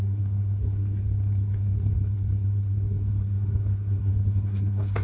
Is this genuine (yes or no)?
no